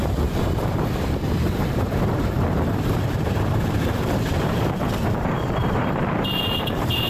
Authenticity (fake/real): fake